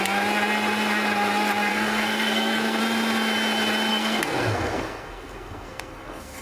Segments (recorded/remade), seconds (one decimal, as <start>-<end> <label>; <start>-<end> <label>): 0.0-1.7 recorded; 1.7-2.8 remade; 2.8-3.9 recorded; 3.9-6.4 remade